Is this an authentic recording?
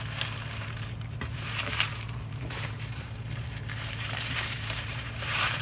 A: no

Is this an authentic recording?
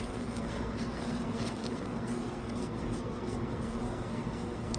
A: no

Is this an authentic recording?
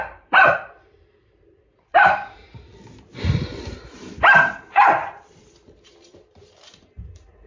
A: no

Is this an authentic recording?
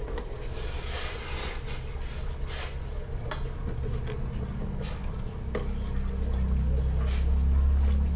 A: yes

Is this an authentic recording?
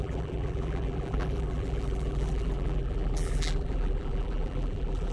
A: no